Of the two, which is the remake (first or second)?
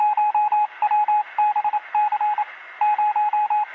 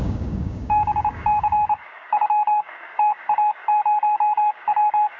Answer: second